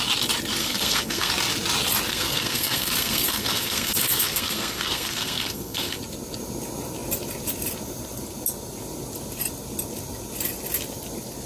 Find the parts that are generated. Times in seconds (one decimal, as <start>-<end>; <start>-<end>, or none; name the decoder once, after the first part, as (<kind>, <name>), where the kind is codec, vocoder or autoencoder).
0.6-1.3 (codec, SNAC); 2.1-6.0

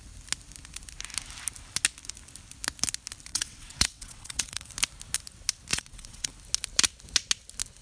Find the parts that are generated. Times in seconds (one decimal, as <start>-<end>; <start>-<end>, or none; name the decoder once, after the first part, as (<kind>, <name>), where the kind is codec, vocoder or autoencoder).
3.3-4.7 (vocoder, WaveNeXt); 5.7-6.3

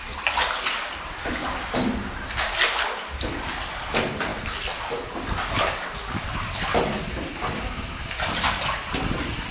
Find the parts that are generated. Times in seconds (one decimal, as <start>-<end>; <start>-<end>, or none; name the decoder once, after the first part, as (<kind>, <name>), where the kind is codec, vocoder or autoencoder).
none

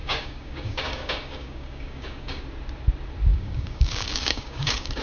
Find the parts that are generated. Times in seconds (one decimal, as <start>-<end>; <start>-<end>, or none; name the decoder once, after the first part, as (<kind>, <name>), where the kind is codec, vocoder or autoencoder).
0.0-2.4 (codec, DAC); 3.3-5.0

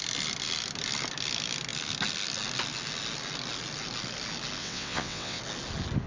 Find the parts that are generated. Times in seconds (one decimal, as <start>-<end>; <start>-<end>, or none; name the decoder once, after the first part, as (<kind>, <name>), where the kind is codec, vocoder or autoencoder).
4.6-5.4 (vocoder, WaveNeXt)

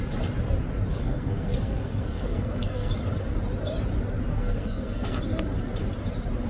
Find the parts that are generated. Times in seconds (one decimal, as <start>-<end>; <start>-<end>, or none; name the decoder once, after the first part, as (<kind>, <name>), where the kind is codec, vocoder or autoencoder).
0.9-2.9 (codec, SNAC); 4.3-5.2